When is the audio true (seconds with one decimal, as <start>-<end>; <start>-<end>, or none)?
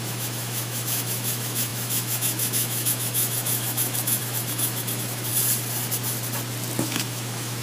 5.3-6.8